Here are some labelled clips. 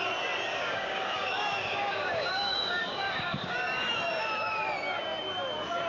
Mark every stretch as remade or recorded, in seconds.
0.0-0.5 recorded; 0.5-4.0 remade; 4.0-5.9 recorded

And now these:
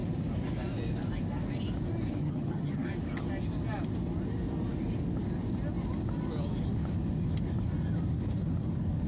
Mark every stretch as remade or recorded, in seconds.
0.0-2.2 recorded; 2.2-2.9 remade; 2.9-9.1 recorded

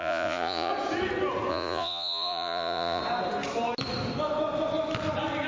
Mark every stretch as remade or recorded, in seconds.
0.0-0.7 remade; 0.7-1.5 recorded; 1.5-3.0 remade; 3.0-5.5 recorded

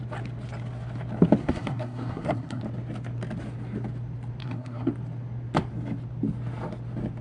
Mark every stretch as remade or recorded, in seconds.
0.0-1.4 recorded; 1.4-2.6 remade; 2.6-4.4 recorded; 4.4-4.9 remade; 4.9-7.2 recorded

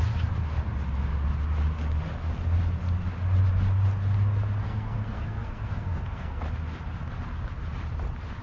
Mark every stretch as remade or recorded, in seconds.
0.0-4.6 recorded; 4.6-6.4 remade; 6.4-8.4 recorded

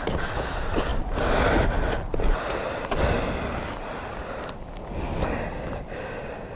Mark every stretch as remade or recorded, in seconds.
0.0-6.6 recorded